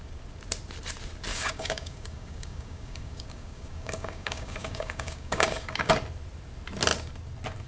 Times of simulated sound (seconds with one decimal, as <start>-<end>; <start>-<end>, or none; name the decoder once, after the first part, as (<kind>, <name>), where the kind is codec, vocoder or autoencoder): 1.3-5.9 (codec, DAC)